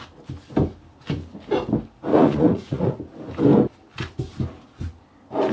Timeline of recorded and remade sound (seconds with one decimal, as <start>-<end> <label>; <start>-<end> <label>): 0.0-2.1 recorded; 2.1-3.0 remade; 3.0-5.5 recorded

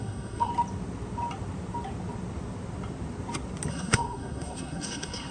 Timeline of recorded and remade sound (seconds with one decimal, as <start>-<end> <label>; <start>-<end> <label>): 0.0-0.5 remade; 0.5-3.7 recorded; 3.7-5.3 remade

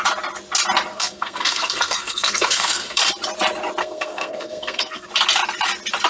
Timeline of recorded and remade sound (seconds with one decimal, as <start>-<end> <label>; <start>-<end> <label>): 0.0-0.9 recorded; 0.9-3.0 remade; 3.0-3.8 recorded; 3.8-5.1 remade; 5.1-6.1 recorded

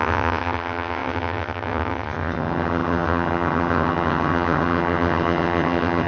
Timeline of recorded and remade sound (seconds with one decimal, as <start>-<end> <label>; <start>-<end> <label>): 0.0-6.1 remade